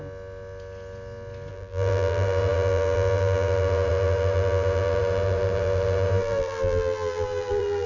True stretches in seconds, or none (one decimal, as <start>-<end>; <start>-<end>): 0.0-1.5